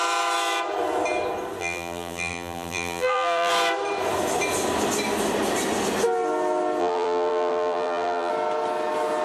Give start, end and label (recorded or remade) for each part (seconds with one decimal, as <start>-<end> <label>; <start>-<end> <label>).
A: 0.0-1.6 recorded; 1.6-3.5 remade; 3.5-6.8 recorded; 6.8-8.3 remade; 8.3-9.2 recorded